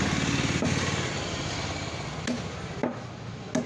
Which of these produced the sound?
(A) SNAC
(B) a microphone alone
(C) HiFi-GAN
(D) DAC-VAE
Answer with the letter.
B